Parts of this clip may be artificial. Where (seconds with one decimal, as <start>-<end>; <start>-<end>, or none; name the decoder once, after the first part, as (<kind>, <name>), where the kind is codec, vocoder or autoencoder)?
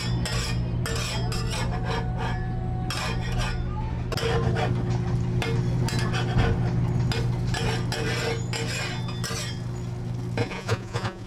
10.4-11.3 (vocoder, Vocos)